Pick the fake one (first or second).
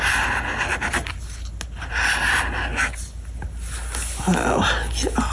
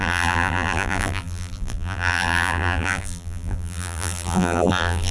second